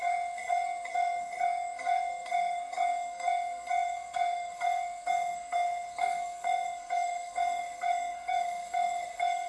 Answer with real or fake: fake